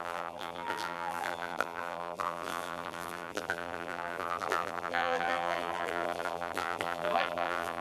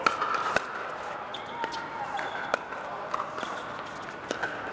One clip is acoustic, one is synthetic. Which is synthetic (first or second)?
first